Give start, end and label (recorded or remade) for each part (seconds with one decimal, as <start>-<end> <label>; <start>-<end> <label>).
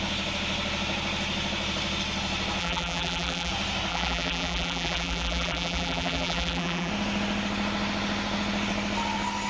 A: 0.0-2.6 recorded; 2.6-3.5 remade; 3.5-3.9 recorded; 3.9-6.9 remade; 6.9-9.5 recorded